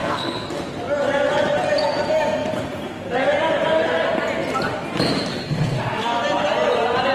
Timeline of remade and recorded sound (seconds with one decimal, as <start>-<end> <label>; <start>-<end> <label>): 0.0-0.6 remade; 0.6-5.3 recorded; 5.3-6.2 remade; 6.2-7.1 recorded